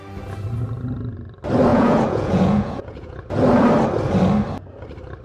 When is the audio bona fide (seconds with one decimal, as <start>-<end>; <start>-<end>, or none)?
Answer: 0.0-1.7; 3.4-5.2